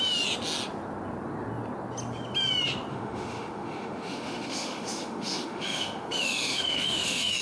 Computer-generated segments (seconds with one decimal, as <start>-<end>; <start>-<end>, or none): 2.9-7.4